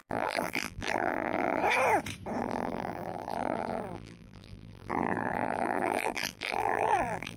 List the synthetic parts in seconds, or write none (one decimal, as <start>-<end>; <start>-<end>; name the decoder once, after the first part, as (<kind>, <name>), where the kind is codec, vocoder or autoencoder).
0.0-1.6 (vocoder, BigVGAN v2); 2.4-7.4